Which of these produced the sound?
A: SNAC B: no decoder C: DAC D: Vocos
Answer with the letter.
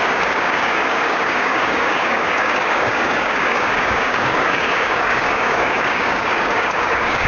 C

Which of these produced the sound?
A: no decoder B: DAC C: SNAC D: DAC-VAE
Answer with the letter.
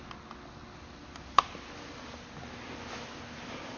A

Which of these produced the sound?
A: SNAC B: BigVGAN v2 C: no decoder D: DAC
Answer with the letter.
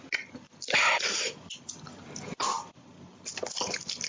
C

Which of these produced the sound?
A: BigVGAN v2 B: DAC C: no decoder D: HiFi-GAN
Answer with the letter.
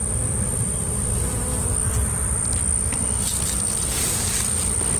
C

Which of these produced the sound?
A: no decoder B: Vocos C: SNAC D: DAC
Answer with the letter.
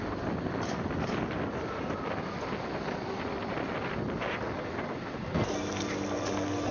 A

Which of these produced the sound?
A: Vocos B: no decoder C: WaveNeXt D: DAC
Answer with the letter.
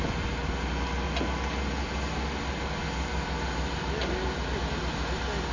B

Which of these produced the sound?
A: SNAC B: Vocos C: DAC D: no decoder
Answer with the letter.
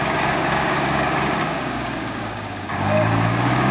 C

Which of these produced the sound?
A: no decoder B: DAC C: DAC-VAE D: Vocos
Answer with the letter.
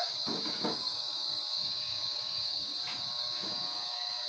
B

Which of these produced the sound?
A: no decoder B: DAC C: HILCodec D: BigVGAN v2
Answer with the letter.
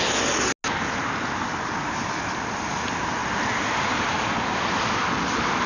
A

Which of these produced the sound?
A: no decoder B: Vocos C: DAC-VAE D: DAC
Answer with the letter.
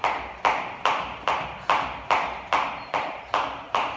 A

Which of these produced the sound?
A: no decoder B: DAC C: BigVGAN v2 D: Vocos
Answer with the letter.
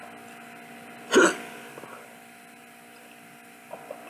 A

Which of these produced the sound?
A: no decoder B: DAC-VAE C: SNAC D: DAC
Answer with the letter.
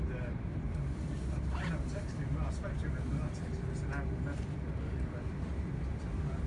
A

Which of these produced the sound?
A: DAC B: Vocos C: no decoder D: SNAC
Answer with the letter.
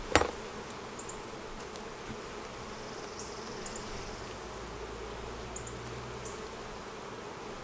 C